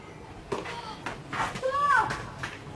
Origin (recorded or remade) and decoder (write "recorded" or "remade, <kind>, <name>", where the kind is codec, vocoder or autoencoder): recorded